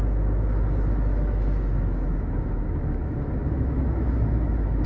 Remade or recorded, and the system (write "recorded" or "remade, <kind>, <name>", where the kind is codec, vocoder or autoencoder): remade, autoencoder, DAC-VAE